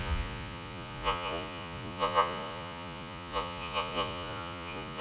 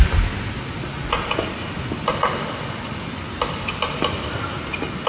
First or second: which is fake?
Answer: first